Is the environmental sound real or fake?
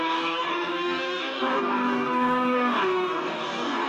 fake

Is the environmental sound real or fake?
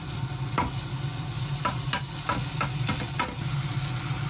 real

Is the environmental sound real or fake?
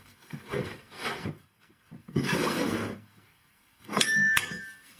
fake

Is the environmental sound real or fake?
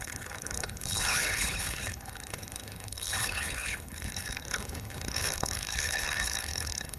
fake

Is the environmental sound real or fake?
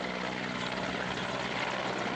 real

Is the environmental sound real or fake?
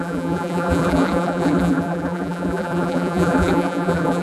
fake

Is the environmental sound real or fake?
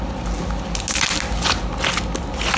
real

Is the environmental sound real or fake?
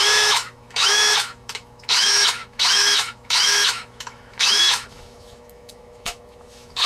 fake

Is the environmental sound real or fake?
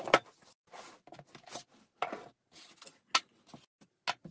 real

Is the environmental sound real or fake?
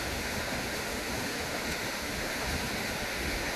fake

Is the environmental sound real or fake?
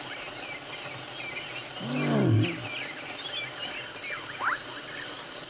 real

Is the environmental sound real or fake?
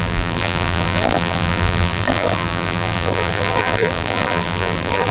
fake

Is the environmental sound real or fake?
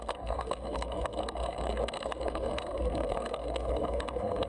fake